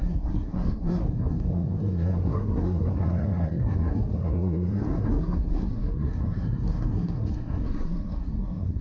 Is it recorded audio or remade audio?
remade